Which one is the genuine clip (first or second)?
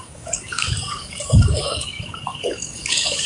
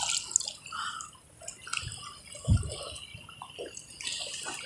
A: second